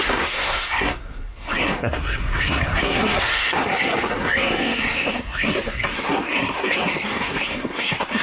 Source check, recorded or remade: remade